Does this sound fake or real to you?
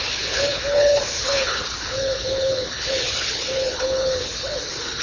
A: fake